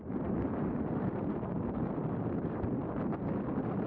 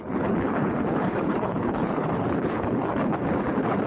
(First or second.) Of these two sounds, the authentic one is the first